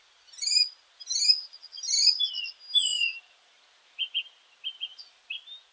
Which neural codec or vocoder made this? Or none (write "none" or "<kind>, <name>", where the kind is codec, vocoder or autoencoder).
none